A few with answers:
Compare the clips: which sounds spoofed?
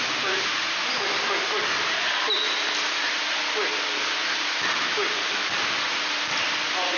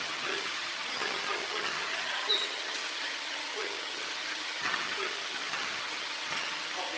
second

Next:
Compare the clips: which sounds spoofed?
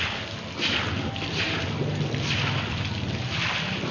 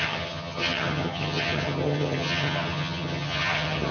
second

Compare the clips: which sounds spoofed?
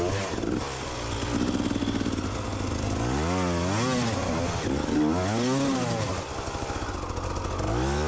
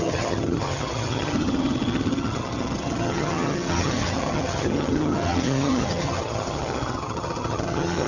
second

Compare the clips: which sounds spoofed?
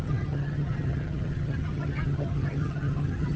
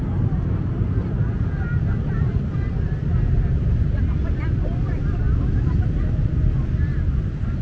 first